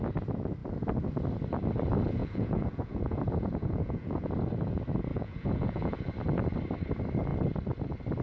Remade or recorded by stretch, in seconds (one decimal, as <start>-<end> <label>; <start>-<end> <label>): 0.0-2.2 recorded; 2.2-4.3 remade; 4.3-5.1 recorded; 5.1-6.1 remade; 6.1-8.2 recorded